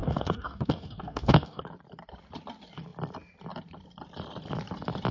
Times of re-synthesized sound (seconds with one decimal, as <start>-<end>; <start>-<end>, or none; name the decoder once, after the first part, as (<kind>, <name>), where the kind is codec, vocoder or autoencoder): 0.0-1.6 (codec, DAC)